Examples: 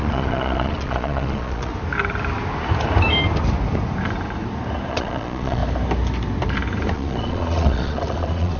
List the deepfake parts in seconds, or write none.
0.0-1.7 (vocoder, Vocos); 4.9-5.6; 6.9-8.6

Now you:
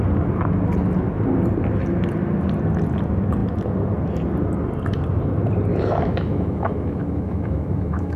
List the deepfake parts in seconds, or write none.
5.7-8.2 (autoencoder, DAC-VAE)